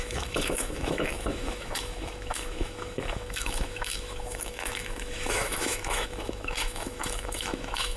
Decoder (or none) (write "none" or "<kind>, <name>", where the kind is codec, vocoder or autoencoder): autoencoder, DAC-VAE